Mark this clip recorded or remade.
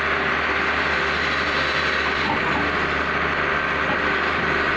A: recorded